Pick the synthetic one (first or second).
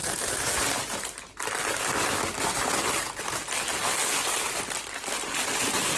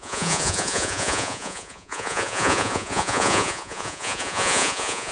second